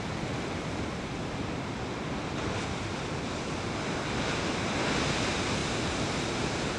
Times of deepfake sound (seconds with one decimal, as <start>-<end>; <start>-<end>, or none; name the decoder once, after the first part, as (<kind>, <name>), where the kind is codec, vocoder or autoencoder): 5.6-6.8 (vocoder, BigVGAN v2)